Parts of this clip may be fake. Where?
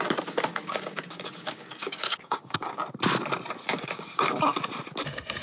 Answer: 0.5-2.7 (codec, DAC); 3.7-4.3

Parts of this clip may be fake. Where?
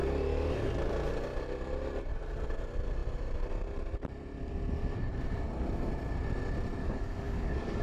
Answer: 6.8-7.8 (codec, DAC)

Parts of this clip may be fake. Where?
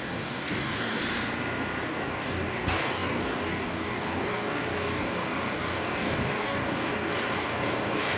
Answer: 0.0-1.0 (codec, DAC); 1.8-8.2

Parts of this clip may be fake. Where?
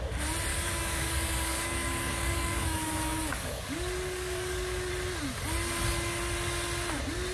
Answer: 0.5-4.9 (codec, DAC)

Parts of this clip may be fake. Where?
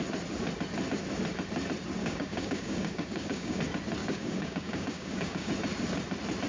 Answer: 2.0-3.6 (codec, DAC); 4.0-5.5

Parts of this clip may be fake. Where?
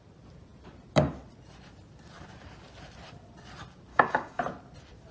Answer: 3.9-4.4 (codec, DAC)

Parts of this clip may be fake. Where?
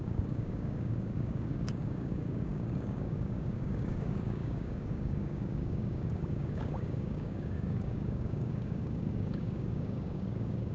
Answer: 0.0-10.7 (codec, DAC)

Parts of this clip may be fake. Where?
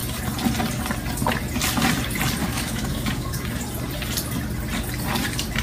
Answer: 2.4-3.3 (codec, DAC)